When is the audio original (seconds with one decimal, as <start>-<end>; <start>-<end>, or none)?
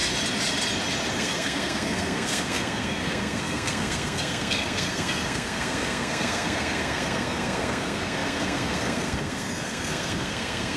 0.0-1.1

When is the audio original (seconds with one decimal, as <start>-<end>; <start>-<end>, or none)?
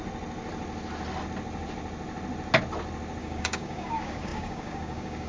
0.0-3.2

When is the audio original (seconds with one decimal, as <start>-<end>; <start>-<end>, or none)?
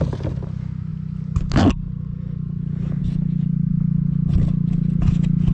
0.0-5.5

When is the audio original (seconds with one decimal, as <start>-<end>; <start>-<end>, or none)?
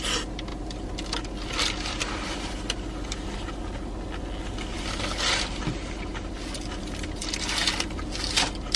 0.0-8.8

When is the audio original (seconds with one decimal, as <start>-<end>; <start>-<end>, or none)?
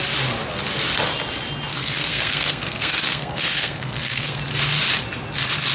0.0-1.7; 4.4-5.7